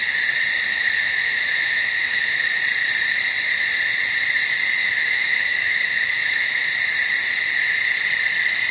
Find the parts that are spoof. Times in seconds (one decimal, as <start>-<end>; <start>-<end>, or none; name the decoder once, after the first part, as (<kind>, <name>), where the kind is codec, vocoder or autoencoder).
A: 0.7-2.6 (autoencoder, DAC-VAE); 4.8-6.7